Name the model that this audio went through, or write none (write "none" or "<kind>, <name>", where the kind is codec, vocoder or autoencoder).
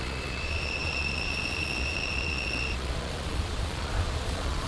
vocoder, Vocos